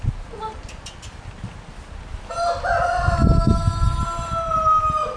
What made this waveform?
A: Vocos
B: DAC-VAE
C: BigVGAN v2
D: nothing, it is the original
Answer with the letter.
D